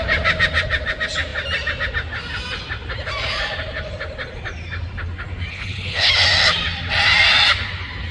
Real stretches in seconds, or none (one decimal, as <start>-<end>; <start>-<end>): 0.0-5.5; 6.1-8.1